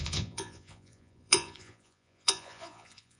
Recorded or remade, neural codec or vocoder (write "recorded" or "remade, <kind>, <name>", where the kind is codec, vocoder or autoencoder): remade, vocoder, Vocos